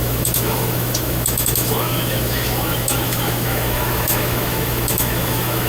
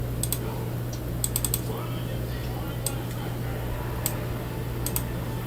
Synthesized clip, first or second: first